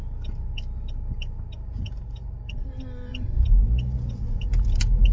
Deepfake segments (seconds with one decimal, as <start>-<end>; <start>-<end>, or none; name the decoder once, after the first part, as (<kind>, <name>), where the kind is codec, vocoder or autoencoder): none